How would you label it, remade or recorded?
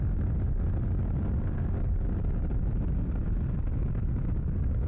recorded